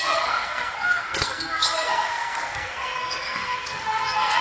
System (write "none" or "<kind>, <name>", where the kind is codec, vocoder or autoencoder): codec, SNAC